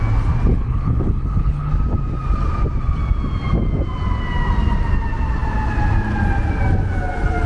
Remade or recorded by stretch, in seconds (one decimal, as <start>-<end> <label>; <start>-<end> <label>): 0.0-0.5 recorded; 0.5-1.7 remade; 1.7-7.5 recorded